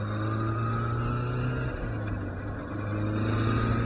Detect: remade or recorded recorded